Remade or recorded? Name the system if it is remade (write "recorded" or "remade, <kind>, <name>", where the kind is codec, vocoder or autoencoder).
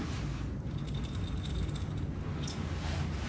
recorded